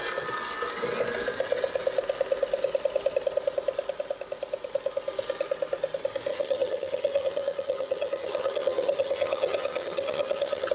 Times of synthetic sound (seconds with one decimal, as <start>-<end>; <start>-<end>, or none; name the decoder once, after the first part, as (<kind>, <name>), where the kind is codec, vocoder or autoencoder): 6.3-10.7 (vocoder, HiFi-GAN)